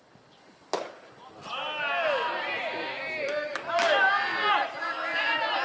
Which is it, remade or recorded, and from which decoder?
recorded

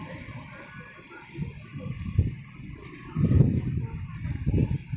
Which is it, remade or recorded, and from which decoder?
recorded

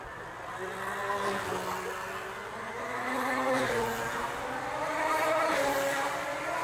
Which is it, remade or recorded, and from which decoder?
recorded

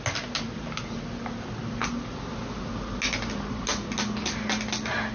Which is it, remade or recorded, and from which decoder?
recorded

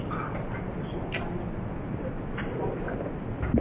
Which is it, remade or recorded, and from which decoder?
recorded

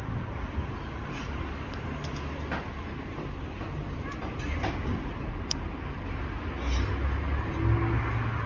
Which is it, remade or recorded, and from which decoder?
recorded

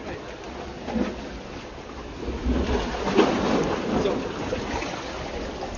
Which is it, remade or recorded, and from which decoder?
recorded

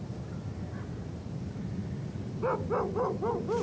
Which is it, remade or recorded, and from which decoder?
recorded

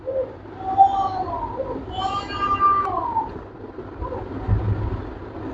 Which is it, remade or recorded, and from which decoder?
recorded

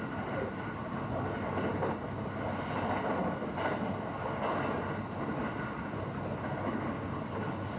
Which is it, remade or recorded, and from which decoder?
recorded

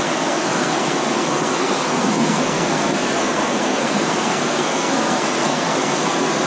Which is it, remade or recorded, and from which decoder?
remade, codec, SNAC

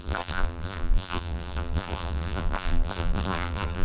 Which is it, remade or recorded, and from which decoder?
remade, vocoder, BigVGAN v2